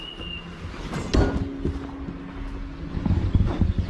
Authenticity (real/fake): real